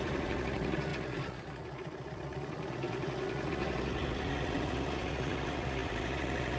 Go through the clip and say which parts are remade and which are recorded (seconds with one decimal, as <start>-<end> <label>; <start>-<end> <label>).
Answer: 0.0-6.6 remade